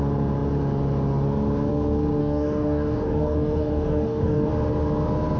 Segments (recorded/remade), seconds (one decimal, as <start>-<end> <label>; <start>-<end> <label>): 0.0-2.2 recorded; 2.2-4.5 remade; 4.5-5.4 recorded